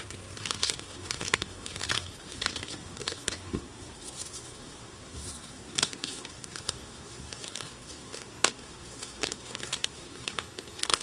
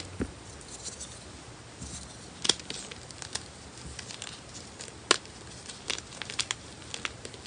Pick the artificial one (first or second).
first